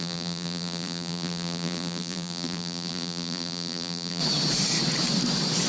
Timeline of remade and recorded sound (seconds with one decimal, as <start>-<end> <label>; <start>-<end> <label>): 0.0-4.2 remade; 4.2-5.7 recorded